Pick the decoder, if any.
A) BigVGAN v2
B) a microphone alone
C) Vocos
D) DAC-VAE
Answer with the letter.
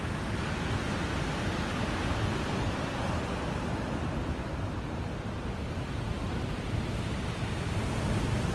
B